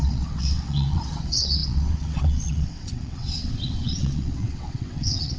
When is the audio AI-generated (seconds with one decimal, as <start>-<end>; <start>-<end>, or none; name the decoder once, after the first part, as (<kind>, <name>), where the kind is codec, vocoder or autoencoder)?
0.0-5.4 (vocoder, WaveNeXt)